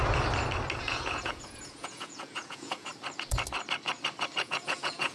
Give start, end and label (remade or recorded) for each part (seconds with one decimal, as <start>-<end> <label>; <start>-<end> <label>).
0.0-0.8 recorded; 0.8-2.9 remade; 2.9-4.4 recorded; 4.4-5.1 remade